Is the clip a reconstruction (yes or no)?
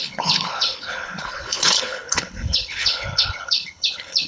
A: yes